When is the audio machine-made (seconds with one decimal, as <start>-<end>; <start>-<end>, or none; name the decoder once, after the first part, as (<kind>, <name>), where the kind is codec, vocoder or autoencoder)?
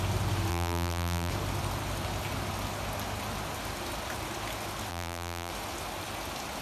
0.5-1.3 (vocoder, BigVGAN v2); 4.9-5.5